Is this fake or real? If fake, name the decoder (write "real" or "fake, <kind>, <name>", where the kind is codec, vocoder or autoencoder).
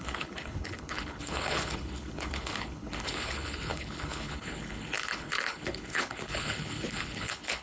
fake, codec, HILCodec